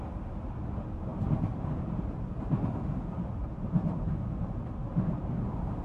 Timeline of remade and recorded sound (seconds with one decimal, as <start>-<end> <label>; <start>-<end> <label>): 0.0-1.1 recorded; 1.1-1.8 remade; 1.8-3.4 recorded; 3.4-5.8 remade